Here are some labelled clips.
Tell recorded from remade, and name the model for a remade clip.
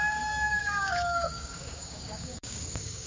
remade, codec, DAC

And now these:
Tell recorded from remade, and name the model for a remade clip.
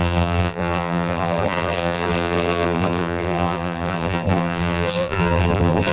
remade, vocoder, BigVGAN v2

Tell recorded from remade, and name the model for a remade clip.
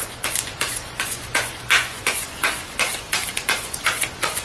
remade, vocoder, Vocos